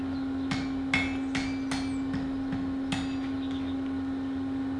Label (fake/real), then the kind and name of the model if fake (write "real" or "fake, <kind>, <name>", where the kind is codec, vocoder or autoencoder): real